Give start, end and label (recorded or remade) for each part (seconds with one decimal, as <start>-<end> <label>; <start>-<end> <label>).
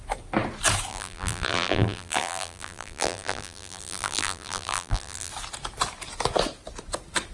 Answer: 0.0-0.9 recorded; 0.9-5.3 remade; 5.3-7.3 recorded